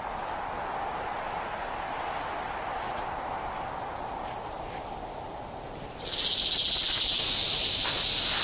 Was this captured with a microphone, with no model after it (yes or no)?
yes